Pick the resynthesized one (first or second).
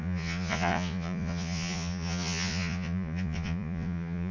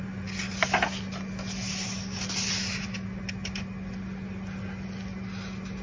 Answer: first